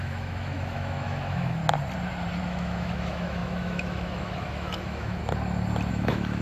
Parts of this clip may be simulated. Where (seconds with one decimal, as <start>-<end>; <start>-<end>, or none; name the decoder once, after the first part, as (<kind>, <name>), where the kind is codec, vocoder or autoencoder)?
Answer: 0.0-1.6 (autoencoder, DAC-VAE); 2.4-5.2; 5.9-6.4